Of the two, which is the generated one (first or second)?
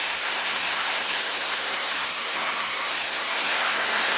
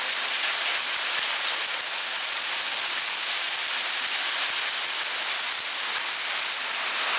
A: first